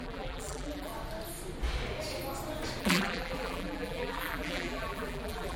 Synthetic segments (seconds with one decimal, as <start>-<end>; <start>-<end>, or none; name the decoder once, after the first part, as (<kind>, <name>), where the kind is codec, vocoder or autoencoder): 0.0-0.9 (vocoder, BigVGAN v2); 2.8-5.6

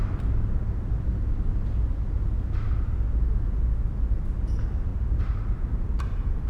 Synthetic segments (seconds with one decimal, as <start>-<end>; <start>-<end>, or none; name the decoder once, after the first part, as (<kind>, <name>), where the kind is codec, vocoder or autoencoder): 4.9-6.5 (vocoder, BigVGAN v2)

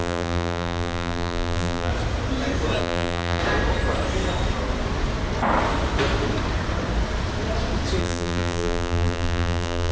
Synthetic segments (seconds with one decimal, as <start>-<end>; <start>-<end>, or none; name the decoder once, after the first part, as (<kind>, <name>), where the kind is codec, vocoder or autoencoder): 0.0-1.9 (vocoder, BigVGAN v2); 2.8-3.4; 8.0-9.9

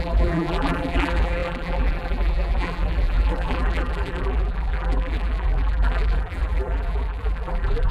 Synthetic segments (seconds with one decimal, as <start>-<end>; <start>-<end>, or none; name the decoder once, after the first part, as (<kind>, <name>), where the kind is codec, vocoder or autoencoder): 0.0-7.9 (vocoder, BigVGAN v2)

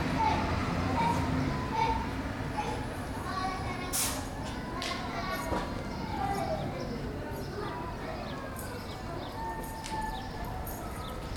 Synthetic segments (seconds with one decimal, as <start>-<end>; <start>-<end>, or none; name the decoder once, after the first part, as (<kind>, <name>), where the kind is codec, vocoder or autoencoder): 0.6-3.6 (vocoder, BigVGAN v2)

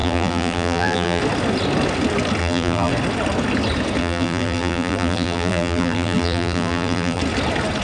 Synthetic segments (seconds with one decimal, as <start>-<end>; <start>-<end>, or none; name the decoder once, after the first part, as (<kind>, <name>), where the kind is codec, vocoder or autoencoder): 0.0-1.2 (vocoder, BigVGAN v2); 2.4-2.9; 4.0-7.2

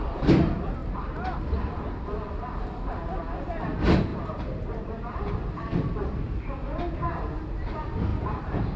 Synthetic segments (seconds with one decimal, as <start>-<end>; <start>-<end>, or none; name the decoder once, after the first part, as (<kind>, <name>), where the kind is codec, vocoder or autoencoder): 4.1-6.4 (vocoder, BigVGAN v2); 8.1-8.8